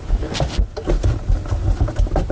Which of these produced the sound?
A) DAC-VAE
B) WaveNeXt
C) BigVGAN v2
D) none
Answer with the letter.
D